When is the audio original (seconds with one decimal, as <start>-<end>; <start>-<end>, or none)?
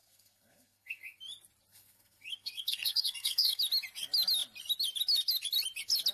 1.2-1.7; 3.6-6.1